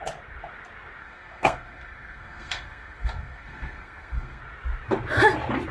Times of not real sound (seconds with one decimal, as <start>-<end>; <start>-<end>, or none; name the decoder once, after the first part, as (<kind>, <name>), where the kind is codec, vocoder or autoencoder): 1.0-4.4 (codec, SNAC)